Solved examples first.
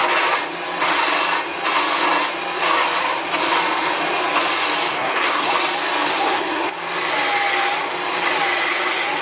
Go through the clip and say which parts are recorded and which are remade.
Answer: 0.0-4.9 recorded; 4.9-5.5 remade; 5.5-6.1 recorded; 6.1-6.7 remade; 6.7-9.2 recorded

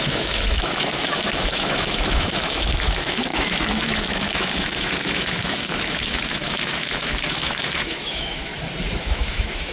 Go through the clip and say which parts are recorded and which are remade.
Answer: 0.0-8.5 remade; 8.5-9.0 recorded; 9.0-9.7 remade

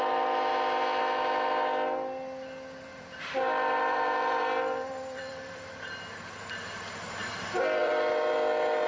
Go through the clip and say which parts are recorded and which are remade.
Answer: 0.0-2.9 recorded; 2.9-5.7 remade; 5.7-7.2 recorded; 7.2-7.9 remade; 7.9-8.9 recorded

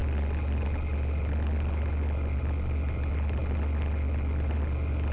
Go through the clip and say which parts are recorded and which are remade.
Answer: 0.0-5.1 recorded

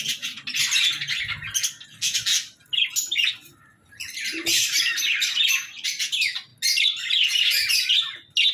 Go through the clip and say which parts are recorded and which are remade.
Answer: 0.0-8.5 recorded

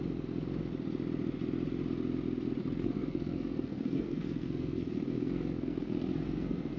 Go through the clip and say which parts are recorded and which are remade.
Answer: 0.0-2.6 recorded; 2.6-6.8 remade